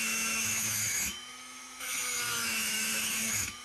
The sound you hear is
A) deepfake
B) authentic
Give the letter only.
A